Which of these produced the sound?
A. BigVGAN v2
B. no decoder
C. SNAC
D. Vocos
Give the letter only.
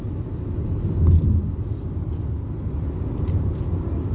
B